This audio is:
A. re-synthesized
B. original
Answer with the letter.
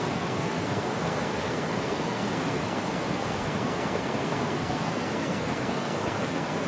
A